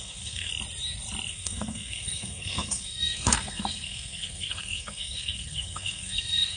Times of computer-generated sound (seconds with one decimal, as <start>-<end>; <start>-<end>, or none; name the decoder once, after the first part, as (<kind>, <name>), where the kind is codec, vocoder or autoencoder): 0.0-0.5 (codec, SNAC); 1.3-6.6